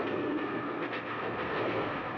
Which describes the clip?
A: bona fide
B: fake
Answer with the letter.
B